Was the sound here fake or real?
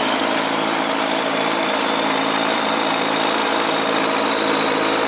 fake